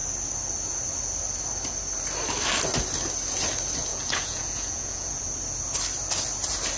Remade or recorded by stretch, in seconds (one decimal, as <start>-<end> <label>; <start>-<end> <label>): 0.0-3.9 recorded; 3.9-5.2 remade; 5.2-6.8 recorded